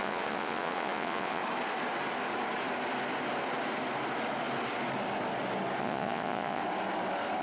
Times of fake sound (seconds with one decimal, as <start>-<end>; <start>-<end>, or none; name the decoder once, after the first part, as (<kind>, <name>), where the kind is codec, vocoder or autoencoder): 0.0-1.4 (vocoder, Vocos); 5.8-6.6